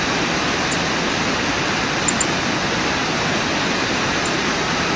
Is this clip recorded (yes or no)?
yes